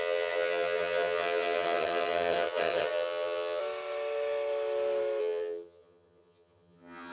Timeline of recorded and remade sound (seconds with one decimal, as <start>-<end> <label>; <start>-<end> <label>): 0.0-3.6 remade; 3.6-5.2 recorded; 5.2-7.1 remade